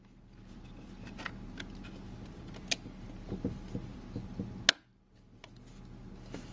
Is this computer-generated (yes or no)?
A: no